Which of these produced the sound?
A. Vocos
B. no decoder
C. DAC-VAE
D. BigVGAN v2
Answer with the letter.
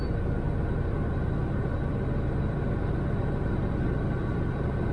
B